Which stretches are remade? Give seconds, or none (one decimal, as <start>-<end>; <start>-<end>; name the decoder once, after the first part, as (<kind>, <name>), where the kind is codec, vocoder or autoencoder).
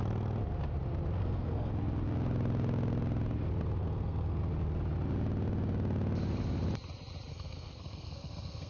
1.2-1.7 (codec, SNAC); 3.8-4.4; 7.3-8.7